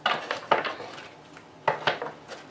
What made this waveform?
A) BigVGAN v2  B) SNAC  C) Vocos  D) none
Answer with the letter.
D